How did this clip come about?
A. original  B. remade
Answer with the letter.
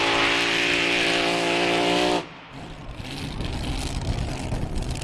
A